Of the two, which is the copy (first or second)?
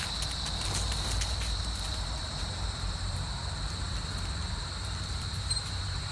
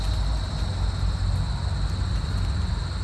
first